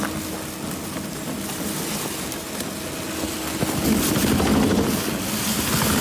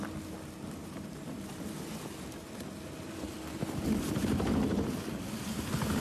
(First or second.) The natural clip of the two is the first